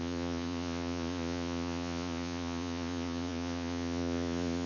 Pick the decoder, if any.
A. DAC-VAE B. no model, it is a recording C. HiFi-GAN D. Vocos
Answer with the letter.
D